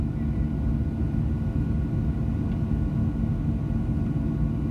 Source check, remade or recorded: recorded